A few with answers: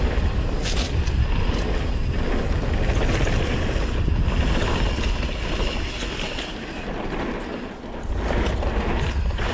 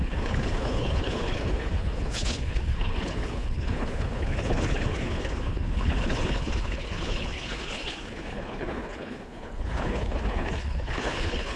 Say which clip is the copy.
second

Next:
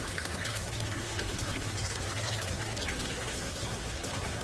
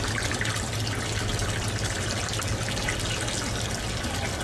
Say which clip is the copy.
first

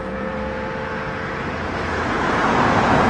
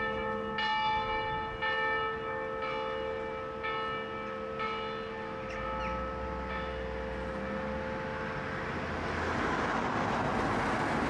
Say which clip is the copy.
first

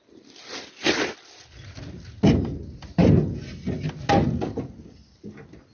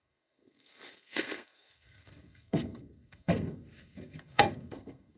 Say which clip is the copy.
second